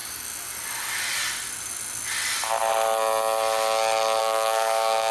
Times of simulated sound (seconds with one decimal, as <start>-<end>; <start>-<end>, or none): 4.2-5.1